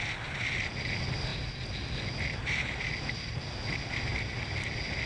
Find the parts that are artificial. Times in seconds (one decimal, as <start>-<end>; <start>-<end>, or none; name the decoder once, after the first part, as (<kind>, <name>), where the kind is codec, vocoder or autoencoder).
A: none